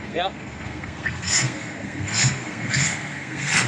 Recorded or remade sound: remade